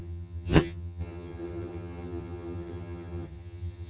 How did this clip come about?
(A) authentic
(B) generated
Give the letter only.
B